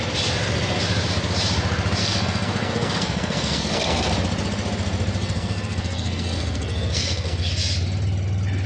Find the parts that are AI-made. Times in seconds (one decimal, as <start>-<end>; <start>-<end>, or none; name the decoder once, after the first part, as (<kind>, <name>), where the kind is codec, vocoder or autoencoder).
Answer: 2.0-4.1 (codec, SNAC); 5.2-7.5